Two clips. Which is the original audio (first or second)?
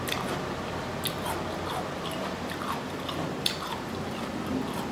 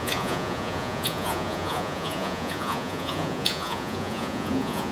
first